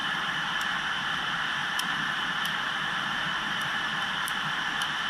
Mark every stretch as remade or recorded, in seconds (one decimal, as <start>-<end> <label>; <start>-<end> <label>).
0.0-0.5 remade; 0.5-1.6 recorded; 1.6-4.6 remade; 4.6-5.1 recorded